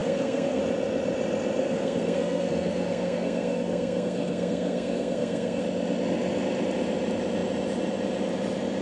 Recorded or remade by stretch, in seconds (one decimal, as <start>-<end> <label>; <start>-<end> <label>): 0.0-0.6 remade; 0.6-1.6 recorded; 1.6-5.6 remade; 5.6-8.8 recorded